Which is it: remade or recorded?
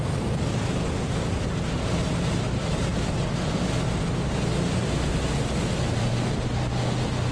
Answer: recorded